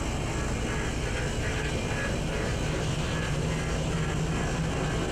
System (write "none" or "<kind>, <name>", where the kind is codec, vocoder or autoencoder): none